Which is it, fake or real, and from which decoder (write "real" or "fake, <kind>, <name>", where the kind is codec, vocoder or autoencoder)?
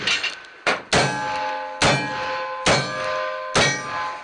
real